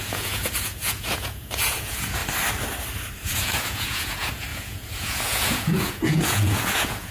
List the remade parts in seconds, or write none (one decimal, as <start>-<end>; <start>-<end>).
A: 0.0-2.2; 3.2-7.1